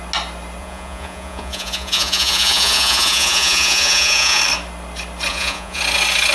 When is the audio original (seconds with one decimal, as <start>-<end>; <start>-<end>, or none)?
0.0-0.6; 4.4-5.3; 5.8-6.3